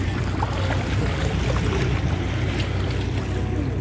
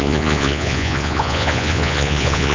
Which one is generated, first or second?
second